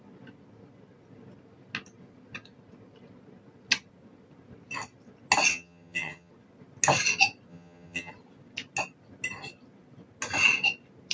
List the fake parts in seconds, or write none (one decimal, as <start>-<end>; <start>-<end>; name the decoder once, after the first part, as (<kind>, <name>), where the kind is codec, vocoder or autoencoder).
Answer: 5.5-6.3 (vocoder, HiFi-GAN); 7.5-8.1